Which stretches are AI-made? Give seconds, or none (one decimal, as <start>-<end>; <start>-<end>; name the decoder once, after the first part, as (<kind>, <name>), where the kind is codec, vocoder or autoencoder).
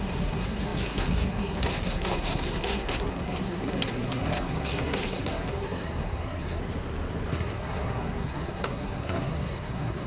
0.0-6.6 (codec, SNAC); 7.3-10.1